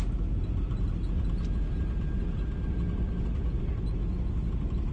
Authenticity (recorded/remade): recorded